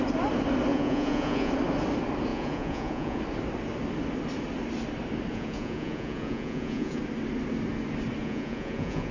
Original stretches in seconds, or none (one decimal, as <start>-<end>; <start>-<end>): 0.0-0.7; 1.5-2.3; 3.2-5.3; 7.0-8.2